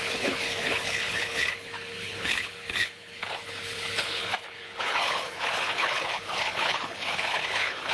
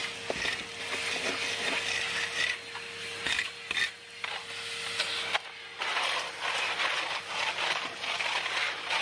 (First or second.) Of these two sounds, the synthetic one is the first